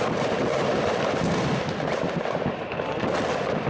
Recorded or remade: recorded